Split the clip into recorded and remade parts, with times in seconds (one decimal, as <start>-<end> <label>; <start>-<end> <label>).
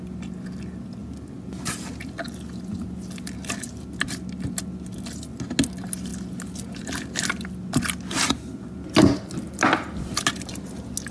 0.0-11.1 recorded